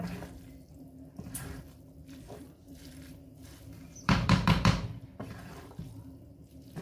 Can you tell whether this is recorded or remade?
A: remade